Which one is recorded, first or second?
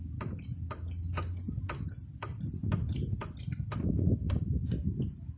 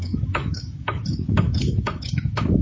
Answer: first